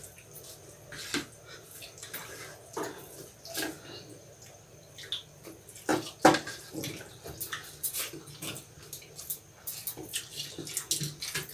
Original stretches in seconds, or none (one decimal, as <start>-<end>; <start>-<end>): 0.0-11.5